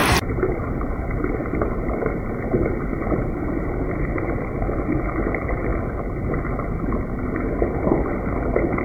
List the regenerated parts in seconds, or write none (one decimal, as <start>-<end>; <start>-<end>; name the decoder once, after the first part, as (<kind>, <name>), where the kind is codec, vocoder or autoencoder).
0.0-3.7 (vocoder, BigVGAN v2)